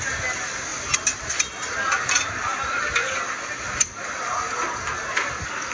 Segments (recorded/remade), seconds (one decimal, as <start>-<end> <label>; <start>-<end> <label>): 0.0-5.7 recorded